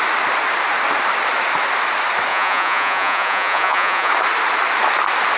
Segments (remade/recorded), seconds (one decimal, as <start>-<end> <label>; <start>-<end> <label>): 0.0-2.3 recorded; 2.3-4.1 remade; 4.1-5.4 recorded